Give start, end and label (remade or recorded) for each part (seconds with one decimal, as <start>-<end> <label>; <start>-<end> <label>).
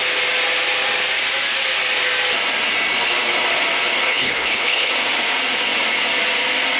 0.0-4.1 recorded; 4.1-4.9 remade; 4.9-6.8 recorded